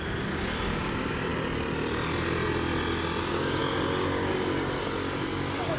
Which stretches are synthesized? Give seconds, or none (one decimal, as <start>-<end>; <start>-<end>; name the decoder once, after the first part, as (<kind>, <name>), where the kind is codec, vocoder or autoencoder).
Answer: 0.0-1.3 (codec, DAC); 3.2-5.8

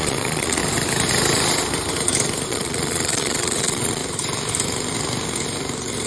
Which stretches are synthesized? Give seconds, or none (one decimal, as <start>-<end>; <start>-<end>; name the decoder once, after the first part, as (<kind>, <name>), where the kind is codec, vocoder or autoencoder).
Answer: 0.0-0.6 (vocoder, Vocos); 2.5-4.0

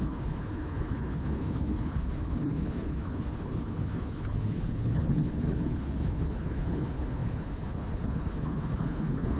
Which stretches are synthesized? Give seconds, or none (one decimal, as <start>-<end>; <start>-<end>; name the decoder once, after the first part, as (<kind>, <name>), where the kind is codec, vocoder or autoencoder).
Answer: 0.0-9.4 (codec, HILCodec)

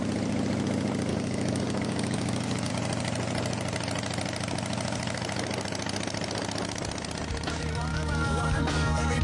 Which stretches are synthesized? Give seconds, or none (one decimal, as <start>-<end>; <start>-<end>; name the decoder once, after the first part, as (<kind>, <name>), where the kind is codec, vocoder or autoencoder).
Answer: 1.1-2.7 (codec, DAC); 7.9-9.2